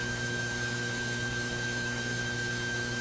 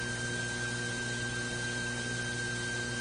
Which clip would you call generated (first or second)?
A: first